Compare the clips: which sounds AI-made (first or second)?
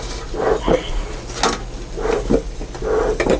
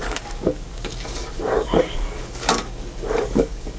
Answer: second